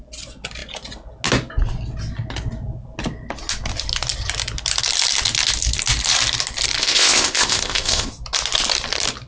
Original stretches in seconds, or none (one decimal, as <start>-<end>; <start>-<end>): 0.0-6.8; 8.1-9.3